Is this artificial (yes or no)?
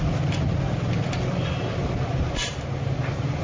no